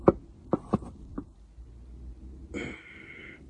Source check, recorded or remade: recorded